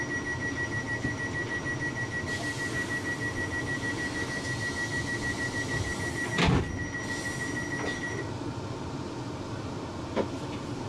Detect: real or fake real